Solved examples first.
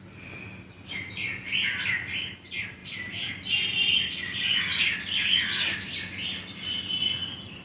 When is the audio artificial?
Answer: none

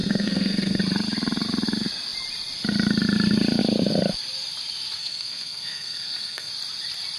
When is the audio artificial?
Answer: 0.0-0.8 (codec, SNAC); 5.0-6.5